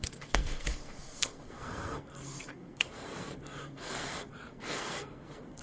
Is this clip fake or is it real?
fake